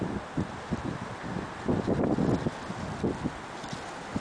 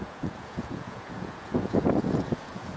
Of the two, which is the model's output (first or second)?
second